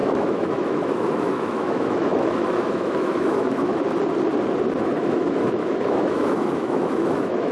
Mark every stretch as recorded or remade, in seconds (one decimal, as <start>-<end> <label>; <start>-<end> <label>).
0.0-3.7 remade; 3.7-4.8 recorded; 4.8-7.5 remade